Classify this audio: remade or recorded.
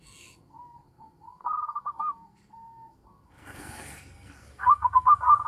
remade